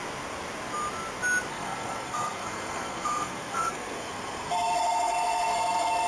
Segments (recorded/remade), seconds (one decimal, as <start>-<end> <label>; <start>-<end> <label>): 0.0-1.5 recorded; 1.5-6.1 remade